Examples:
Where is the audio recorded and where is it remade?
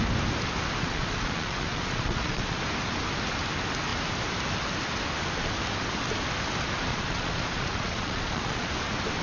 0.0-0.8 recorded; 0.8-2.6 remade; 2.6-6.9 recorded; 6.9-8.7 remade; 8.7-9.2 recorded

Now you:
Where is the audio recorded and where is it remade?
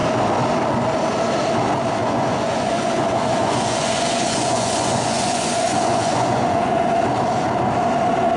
0.0-2.0 recorded; 2.0-7.0 remade; 7.0-8.4 recorded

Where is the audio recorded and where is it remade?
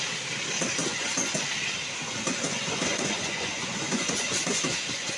0.0-0.8 recorded; 0.8-1.4 remade; 1.4-2.0 recorded; 2.0-5.2 remade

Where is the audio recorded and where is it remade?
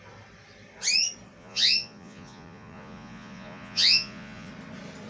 0.0-1.4 recorded; 1.4-4.5 remade; 4.5-5.1 recorded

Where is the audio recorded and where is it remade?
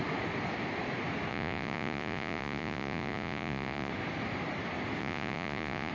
0.0-1.3 recorded; 1.3-3.9 remade; 3.9-5.0 recorded; 5.0-5.9 remade